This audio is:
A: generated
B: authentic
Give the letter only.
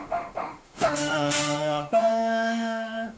A